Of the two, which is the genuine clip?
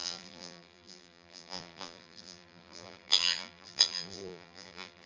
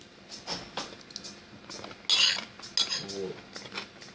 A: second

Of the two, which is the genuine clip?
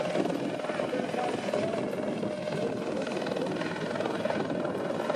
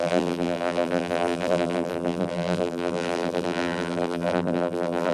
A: first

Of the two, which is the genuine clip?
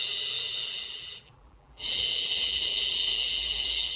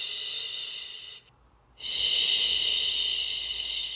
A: second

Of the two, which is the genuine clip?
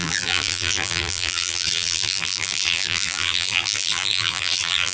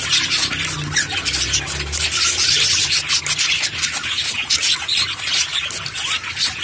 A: second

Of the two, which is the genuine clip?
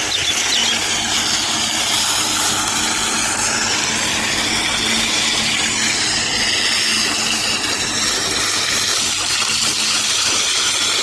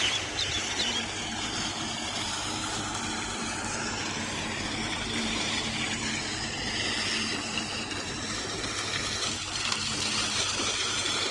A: first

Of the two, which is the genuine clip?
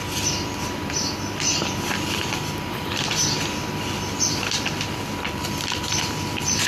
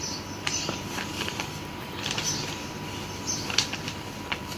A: first